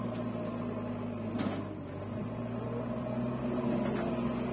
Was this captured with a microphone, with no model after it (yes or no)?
yes